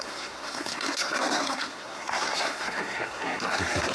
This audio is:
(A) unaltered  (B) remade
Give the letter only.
B